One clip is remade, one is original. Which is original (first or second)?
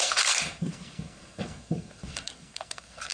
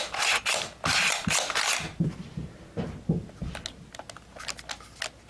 second